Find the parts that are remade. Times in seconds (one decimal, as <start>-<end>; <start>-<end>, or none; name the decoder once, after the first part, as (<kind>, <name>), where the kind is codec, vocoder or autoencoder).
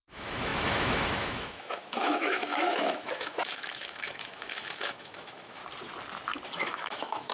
0.0-5.6 (autoencoder, DAC-VAE); 6.5-7.3